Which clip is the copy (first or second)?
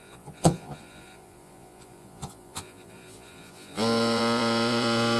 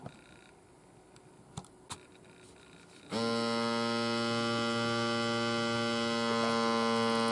first